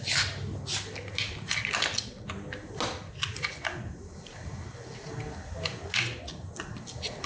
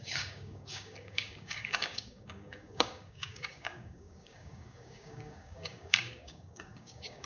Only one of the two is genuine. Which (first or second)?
first